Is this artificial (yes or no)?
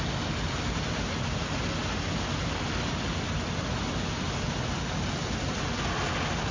no